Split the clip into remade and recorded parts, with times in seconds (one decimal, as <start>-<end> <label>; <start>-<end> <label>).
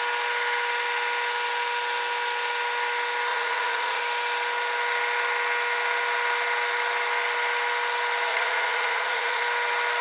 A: 0.0-3.3 recorded; 3.3-4.0 remade; 4.0-8.3 recorded; 8.3-9.4 remade; 9.4-10.0 recorded